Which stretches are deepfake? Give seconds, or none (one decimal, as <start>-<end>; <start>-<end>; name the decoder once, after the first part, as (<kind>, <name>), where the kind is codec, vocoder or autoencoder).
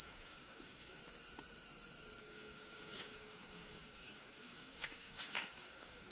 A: 0.0-1.0 (codec, DAC); 2.2-6.1